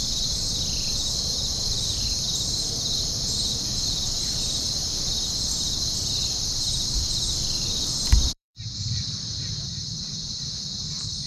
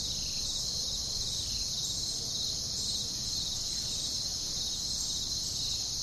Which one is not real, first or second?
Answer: first